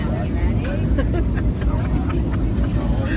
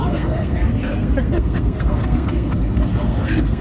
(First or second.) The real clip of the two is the first